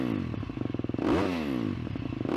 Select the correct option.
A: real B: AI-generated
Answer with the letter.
A